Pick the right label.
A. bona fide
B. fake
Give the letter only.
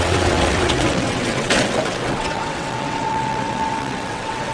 B